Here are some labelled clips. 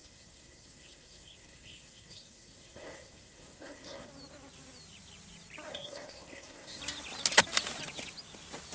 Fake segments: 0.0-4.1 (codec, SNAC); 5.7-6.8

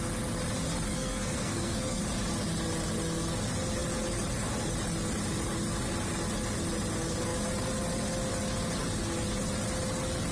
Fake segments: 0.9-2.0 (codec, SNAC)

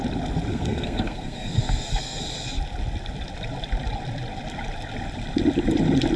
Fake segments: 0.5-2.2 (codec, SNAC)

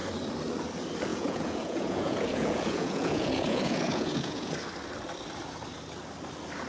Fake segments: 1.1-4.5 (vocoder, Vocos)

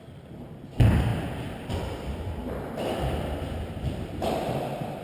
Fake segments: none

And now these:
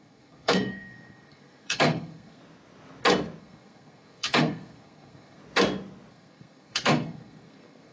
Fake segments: 0.0-2.4 (codec, SNAC); 3.4-5.4; 6.1-7.9

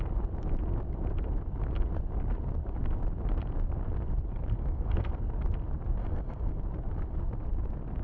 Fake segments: 4.6-5.1 (codec, SNAC); 6.0-6.6

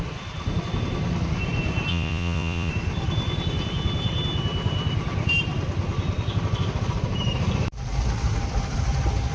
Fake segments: 1.9-2.7 (vocoder, Vocos)